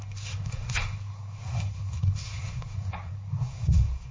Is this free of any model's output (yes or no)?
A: no